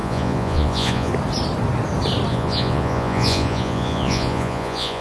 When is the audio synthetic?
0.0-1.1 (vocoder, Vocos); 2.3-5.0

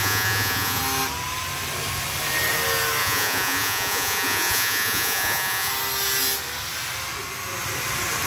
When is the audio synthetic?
0.0-0.8 (vocoder, Vocos); 3.0-5.7

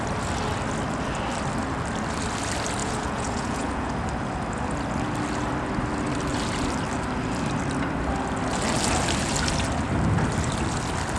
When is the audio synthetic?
2.8-3.9 (vocoder, Vocos)